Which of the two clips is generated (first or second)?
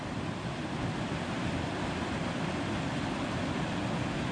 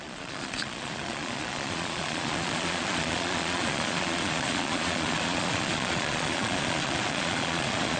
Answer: second